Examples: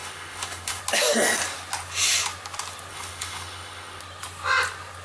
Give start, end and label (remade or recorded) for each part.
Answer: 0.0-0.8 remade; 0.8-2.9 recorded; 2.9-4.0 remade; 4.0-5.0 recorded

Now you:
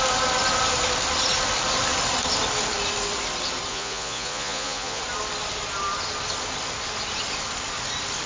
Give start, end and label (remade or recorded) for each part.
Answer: 0.0-3.7 recorded; 3.7-5.0 remade; 5.0-8.3 recorded

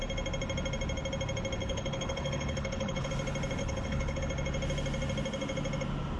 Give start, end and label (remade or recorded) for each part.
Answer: 0.0-1.6 recorded; 1.6-3.1 remade; 3.1-3.6 recorded; 3.6-4.2 remade; 4.2-6.2 recorded

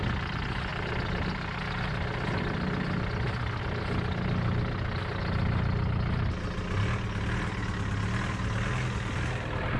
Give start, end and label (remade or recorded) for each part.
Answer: 0.0-9.8 recorded